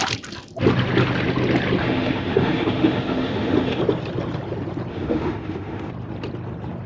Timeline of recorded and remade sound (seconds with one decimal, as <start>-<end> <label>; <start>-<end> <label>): 0.0-1.8 recorded; 1.8-3.8 remade; 3.8-4.9 recorded; 4.9-5.9 remade; 5.9-6.9 recorded